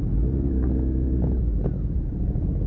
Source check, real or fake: real